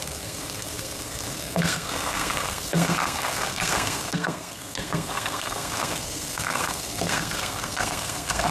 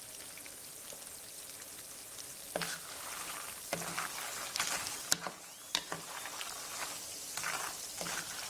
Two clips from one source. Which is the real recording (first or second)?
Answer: second